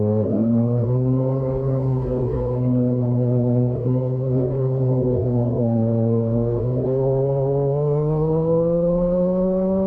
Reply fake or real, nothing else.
fake